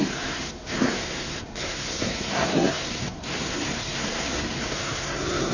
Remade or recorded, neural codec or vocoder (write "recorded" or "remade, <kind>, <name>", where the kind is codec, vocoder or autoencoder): remade, codec, SNAC